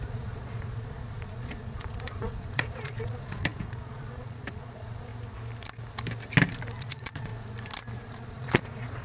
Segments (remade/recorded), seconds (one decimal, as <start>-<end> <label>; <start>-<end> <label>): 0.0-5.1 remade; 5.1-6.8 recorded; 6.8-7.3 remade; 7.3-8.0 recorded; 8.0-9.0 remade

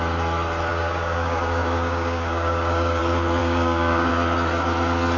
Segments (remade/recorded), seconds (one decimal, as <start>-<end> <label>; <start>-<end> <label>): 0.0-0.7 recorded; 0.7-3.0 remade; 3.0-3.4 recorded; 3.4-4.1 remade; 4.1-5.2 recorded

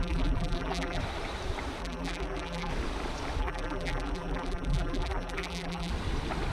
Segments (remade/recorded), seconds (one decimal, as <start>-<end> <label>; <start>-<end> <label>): 0.0-1.0 remade; 1.0-1.8 recorded; 1.8-2.7 remade; 2.7-3.4 recorded; 3.4-5.9 remade; 5.9-6.5 recorded

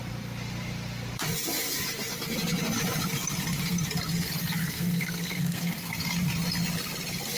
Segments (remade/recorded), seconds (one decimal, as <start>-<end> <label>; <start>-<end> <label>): 0.0-4.6 recorded; 4.6-5.9 remade; 5.9-7.4 recorded

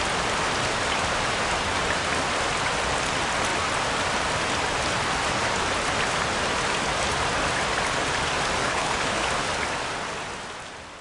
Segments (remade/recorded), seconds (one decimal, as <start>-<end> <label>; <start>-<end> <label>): 0.0-8.6 recorded; 8.6-9.3 remade; 9.3-11.0 recorded

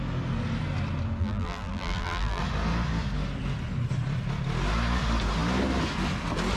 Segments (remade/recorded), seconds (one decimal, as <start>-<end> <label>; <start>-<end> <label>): 0.0-1.2 recorded; 1.2-2.4 remade; 2.4-6.6 recorded

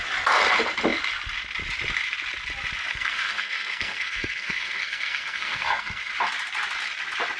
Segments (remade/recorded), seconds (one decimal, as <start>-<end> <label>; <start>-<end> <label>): 0.0-2.9 recorded; 2.9-6.1 remade; 6.1-7.4 recorded

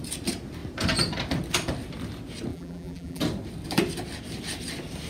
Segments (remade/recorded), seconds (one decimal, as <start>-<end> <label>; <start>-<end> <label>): 0.0-2.5 recorded; 2.5-3.2 remade; 3.2-5.1 recorded